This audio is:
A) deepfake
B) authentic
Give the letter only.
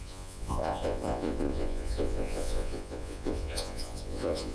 A